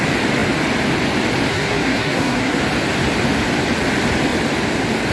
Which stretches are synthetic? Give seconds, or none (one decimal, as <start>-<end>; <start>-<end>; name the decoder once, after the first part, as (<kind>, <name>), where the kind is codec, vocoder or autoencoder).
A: 1.5-2.6 (codec, SNAC)